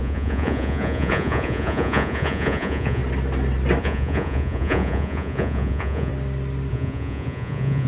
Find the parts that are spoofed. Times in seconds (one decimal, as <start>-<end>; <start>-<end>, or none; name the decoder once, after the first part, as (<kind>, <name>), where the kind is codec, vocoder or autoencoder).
0.0-3.0 (vocoder, Vocos); 3.8-6.1; 6.7-7.9